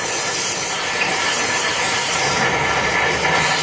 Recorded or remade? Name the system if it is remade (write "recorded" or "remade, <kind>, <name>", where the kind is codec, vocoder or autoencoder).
remade, vocoder, BigVGAN v2